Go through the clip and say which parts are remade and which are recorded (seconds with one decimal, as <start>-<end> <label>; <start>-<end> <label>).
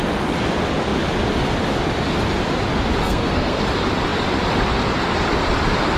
0.0-3.0 recorded; 3.0-3.6 remade; 3.6-6.0 recorded